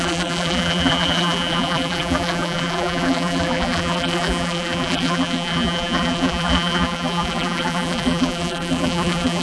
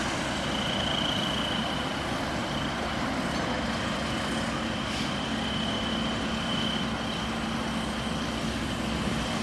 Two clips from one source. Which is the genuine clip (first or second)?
second